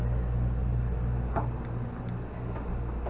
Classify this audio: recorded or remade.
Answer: recorded